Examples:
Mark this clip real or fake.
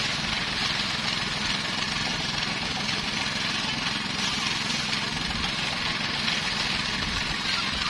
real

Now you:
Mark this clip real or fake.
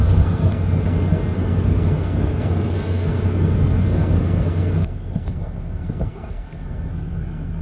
fake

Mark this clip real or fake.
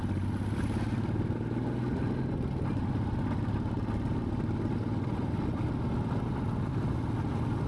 real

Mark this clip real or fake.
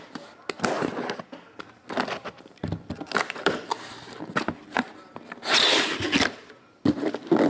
real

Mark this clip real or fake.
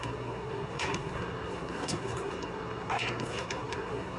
fake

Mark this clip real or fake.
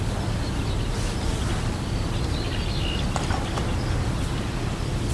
real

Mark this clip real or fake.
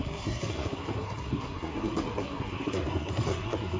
fake